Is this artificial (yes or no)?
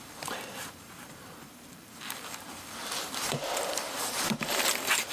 yes